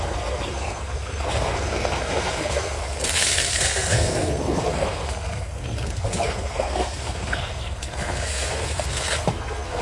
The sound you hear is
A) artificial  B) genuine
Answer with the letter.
A